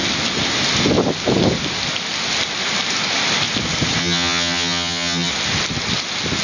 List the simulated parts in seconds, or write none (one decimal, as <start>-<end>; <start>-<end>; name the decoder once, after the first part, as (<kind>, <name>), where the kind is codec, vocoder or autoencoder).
4.0-5.3 (vocoder, HiFi-GAN)